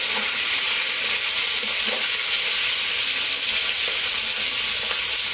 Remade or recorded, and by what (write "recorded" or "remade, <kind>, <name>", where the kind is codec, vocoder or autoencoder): recorded